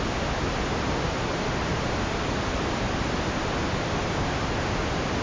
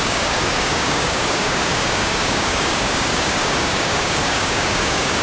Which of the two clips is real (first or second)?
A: first